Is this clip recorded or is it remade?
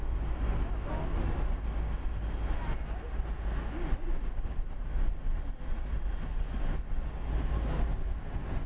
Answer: recorded